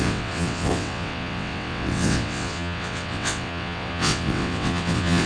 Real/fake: fake